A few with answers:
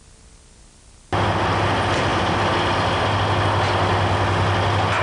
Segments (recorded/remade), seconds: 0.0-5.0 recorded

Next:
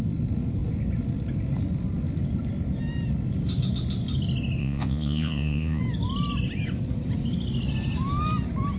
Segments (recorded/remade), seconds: 0.0-4.6 recorded; 4.6-5.8 remade; 5.8-8.8 recorded

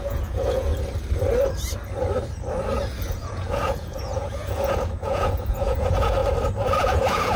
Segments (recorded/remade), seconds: 0.0-0.7 remade; 0.7-3.1 recorded; 3.1-6.2 remade; 6.2-6.8 recorded; 6.8-7.4 remade

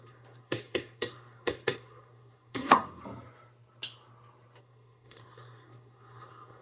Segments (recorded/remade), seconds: 0.0-3.0 remade; 3.0-4.6 recorded; 4.6-6.6 remade

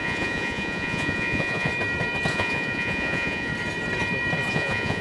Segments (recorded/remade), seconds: 0.0-1.7 remade; 1.7-2.3 recorded; 2.3-3.5 remade; 3.5-4.5 recorded; 4.5-5.0 remade